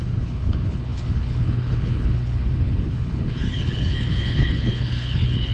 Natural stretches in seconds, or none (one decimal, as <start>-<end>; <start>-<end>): none